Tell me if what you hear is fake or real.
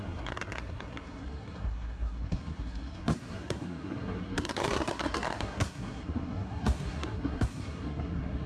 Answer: fake